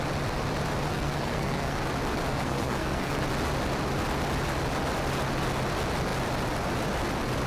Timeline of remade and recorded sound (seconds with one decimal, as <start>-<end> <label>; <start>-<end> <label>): 0.0-0.9 recorded; 0.9-1.8 remade; 1.8-2.3 recorded; 2.3-3.2 remade; 3.2-7.5 recorded